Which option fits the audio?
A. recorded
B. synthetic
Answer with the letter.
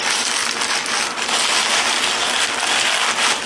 A